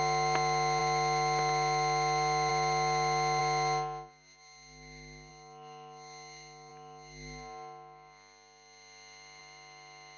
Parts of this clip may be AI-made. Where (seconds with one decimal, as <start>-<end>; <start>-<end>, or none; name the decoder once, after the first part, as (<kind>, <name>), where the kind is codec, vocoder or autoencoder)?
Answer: none